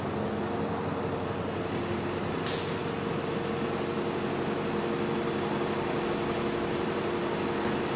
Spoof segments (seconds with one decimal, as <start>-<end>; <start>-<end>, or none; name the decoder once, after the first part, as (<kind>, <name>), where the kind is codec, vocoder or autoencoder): none